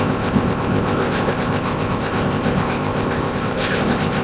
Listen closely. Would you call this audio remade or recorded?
remade